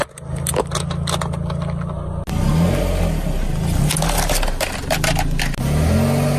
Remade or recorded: recorded